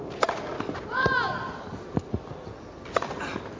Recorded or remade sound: recorded